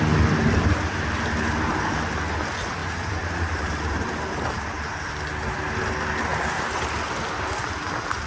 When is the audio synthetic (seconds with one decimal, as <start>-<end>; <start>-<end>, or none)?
0.4-2.0; 2.8-5.1